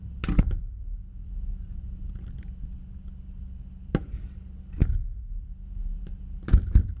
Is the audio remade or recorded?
recorded